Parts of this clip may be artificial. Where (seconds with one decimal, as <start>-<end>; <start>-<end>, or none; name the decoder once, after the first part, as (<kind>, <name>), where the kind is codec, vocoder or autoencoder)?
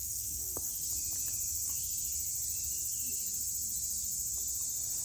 0.0-0.7 (codec, SNAC)